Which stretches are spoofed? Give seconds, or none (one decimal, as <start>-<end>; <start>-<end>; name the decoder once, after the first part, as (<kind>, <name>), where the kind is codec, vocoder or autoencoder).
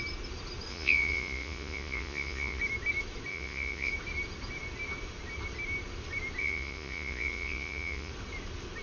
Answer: 0.7-2.6 (vocoder, Vocos); 3.3-3.9; 6.4-8.1